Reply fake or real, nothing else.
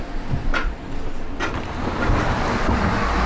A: real